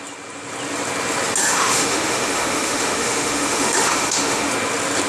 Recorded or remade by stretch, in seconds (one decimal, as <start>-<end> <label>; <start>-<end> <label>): 0.0-1.4 recorded; 1.4-4.5 remade; 4.5-5.1 recorded